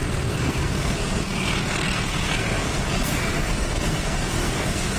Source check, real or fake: fake